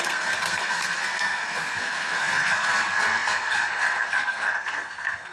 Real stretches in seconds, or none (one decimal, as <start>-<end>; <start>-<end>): none

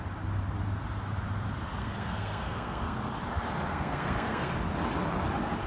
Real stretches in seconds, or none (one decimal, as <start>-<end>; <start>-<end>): 0.0-1.8; 3.1-3.7; 4.5-5.7